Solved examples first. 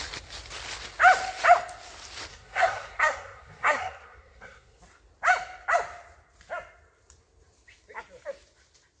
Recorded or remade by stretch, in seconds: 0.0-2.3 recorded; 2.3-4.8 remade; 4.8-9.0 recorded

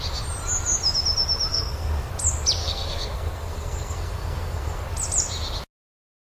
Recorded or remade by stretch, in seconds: 0.0-1.5 recorded; 1.5-2.1 remade; 2.1-2.6 recorded; 2.6-4.8 remade; 4.8-6.3 recorded